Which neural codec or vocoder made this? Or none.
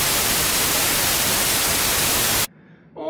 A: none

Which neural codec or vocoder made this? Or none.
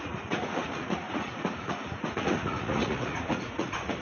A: vocoder, Vocos